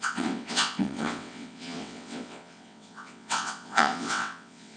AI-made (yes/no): yes